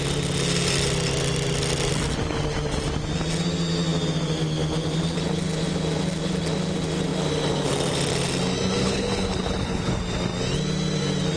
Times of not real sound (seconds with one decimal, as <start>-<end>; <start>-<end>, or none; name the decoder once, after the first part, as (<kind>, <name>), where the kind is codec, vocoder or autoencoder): 8.8-9.9 (codec, HILCodec)